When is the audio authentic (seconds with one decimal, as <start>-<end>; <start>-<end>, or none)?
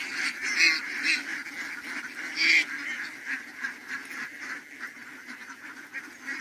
0.0-6.4